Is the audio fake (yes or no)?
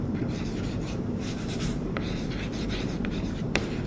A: yes